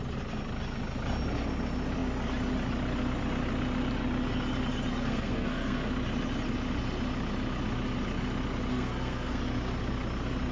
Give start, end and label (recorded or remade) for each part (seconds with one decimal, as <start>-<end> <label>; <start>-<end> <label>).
0.0-4.9 recorded; 4.9-5.9 remade; 5.9-8.7 recorded; 8.7-9.4 remade; 9.4-10.5 recorded